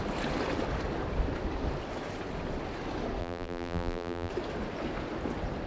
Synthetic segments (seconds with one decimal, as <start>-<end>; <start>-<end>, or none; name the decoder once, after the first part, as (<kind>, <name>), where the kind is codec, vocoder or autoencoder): 3.2-4.3 (vocoder, BigVGAN v2)